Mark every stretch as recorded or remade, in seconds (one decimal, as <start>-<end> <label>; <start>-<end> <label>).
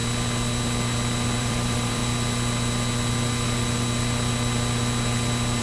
0.0-1.4 recorded; 1.4-2.0 remade; 2.0-5.6 recorded